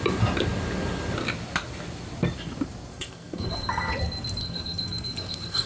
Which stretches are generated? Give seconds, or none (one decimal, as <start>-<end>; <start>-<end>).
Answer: 2.9-3.9; 4.4-5.7